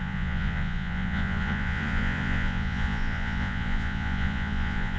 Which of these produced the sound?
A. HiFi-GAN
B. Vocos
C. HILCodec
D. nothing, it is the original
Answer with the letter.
B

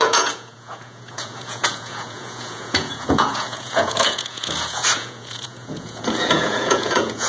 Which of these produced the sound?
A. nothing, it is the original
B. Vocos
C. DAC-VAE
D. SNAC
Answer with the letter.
B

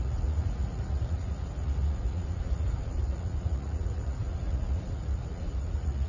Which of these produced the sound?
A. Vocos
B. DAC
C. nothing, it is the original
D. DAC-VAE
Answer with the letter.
A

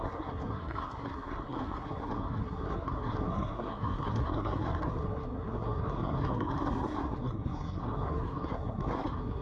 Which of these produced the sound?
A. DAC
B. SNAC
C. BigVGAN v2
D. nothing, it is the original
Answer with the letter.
B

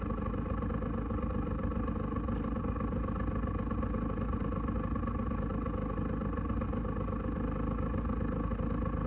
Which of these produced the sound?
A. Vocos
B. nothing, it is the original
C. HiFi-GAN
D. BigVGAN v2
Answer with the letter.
B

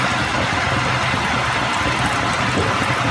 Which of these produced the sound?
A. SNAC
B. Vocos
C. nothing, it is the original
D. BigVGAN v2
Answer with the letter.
C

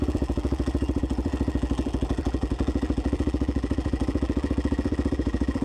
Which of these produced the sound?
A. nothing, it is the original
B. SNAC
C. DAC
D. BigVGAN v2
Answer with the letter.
D